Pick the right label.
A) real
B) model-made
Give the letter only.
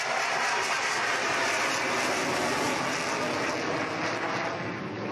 A